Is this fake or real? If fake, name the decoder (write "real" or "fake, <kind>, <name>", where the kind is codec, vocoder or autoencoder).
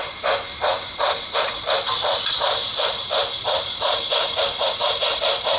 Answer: fake, vocoder, BigVGAN v2